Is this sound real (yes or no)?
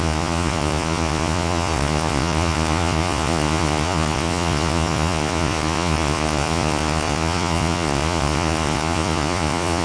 no